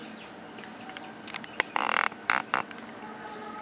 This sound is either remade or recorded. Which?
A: recorded